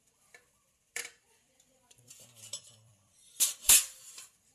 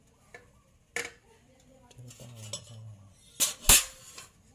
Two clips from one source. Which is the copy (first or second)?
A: first